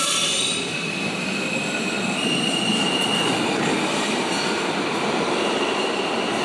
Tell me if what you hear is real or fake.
fake